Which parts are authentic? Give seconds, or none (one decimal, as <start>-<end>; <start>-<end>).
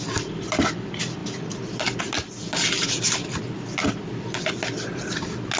0.0-5.6